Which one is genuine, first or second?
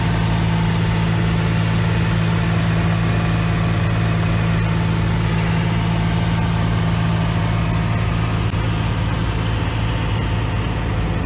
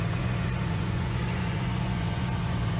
first